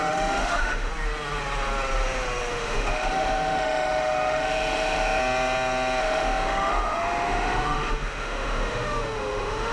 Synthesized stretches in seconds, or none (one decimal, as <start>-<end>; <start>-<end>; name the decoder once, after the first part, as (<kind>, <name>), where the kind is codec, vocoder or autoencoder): 0.0-0.9 (autoencoder, DAC-VAE); 2.5-5.2; 6.0-9.7